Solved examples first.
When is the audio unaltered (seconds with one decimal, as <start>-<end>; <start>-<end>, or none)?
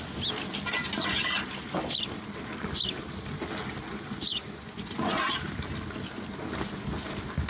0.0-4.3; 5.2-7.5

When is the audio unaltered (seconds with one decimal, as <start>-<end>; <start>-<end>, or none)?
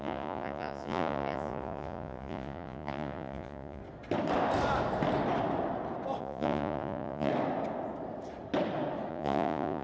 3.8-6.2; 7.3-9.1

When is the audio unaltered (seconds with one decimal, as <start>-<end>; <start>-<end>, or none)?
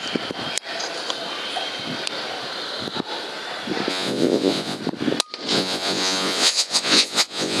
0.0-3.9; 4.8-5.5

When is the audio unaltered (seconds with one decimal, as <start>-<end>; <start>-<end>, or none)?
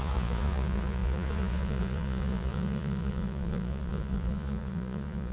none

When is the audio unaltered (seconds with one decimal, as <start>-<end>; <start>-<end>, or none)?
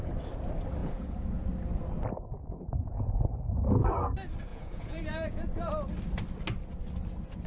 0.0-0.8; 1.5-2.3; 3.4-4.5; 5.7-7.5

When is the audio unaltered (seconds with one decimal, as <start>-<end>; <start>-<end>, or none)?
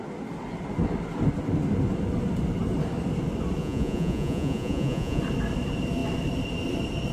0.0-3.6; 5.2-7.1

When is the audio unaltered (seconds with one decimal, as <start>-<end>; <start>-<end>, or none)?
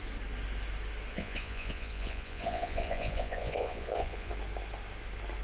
0.0-1.1; 4.3-5.4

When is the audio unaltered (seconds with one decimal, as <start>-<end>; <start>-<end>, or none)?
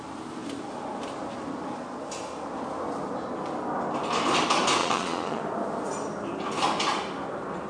0.0-4.8; 5.4-7.7